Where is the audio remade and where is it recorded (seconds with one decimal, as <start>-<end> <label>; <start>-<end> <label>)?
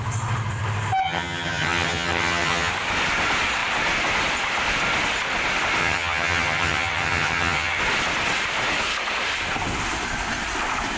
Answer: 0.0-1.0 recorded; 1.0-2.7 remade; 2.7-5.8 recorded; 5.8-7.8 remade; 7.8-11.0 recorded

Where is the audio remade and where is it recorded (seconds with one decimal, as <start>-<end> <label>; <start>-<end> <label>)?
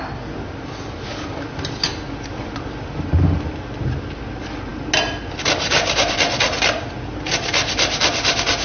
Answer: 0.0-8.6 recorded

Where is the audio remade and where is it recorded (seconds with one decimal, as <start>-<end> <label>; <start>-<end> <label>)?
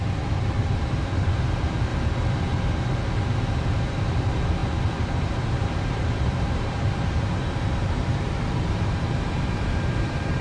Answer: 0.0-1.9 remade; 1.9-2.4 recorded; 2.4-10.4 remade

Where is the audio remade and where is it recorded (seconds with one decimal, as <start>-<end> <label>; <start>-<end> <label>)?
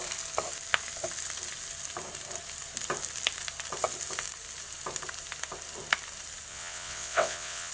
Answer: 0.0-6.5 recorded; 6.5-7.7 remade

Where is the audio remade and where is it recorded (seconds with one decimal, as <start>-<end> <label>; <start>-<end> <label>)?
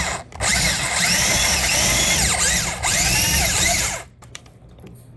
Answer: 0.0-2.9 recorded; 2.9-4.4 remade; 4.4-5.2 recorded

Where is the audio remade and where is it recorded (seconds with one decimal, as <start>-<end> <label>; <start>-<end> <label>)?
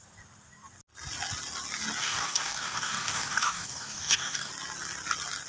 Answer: 0.0-2.0 recorded; 2.0-4.5 remade; 4.5-5.5 recorded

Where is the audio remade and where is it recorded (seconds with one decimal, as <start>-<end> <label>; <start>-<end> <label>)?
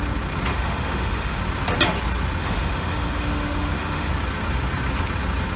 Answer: 0.0-0.5 recorded; 0.5-1.4 remade; 1.4-2.4 recorded; 2.4-4.1 remade; 4.1-5.6 recorded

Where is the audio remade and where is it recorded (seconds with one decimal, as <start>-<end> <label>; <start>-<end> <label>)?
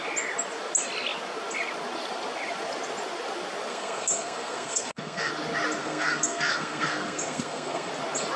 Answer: 0.0-3.7 recorded; 3.7-5.3 remade; 5.3-5.8 recorded; 5.8-7.9 remade; 7.9-8.4 recorded